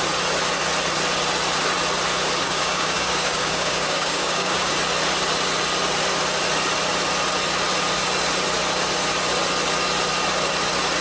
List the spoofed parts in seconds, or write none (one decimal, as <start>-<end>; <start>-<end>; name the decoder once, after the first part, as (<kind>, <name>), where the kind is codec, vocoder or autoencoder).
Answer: 2.4-4.7 (codec, DAC)